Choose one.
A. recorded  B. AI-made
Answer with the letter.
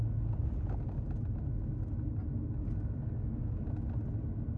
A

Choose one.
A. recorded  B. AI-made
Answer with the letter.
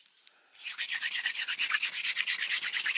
A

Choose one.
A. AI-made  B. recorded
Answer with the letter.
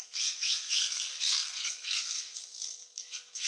A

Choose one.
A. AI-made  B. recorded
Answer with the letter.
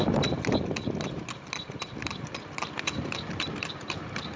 B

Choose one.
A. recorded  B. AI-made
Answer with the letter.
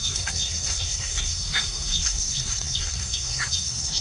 B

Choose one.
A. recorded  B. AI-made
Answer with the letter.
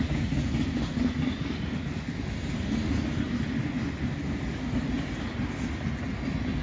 A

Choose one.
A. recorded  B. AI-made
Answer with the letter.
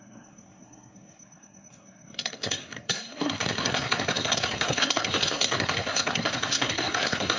B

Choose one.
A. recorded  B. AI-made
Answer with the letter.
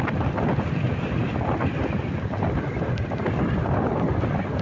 A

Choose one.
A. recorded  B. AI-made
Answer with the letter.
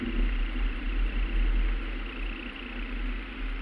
A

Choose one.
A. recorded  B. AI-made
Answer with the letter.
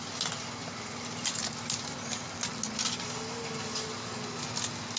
A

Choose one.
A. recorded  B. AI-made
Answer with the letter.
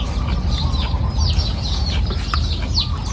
A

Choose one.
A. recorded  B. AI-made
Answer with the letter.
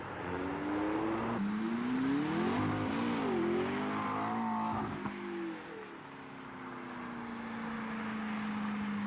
A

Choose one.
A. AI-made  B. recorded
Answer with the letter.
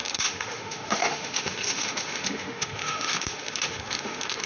A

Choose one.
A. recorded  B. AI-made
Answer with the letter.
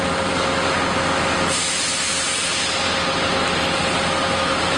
A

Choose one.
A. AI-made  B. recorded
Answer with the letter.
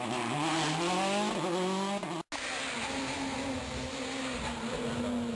B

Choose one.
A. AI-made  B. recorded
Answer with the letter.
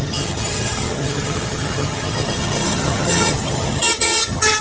A